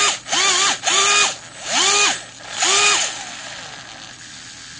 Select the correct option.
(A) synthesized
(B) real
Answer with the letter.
B